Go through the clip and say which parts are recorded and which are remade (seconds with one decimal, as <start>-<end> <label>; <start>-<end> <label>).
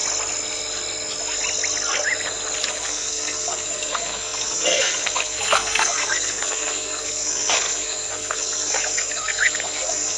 0.0-2.7 recorded; 2.7-10.2 remade